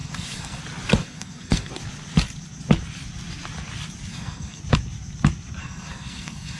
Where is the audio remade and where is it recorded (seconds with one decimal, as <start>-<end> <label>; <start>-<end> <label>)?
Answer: 0.0-0.6 remade; 0.6-1.0 recorded; 1.0-1.7 remade; 1.7-4.1 recorded; 4.1-4.6 remade; 4.6-5.6 recorded; 5.6-6.6 remade